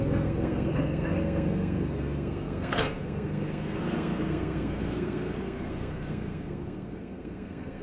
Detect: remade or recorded remade